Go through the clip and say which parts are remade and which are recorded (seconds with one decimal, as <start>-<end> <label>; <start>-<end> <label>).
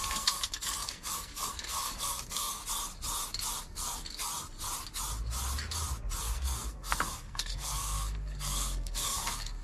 0.0-2.6 remade; 2.6-3.6 recorded; 3.6-4.3 remade; 4.3-6.2 recorded; 6.2-9.6 remade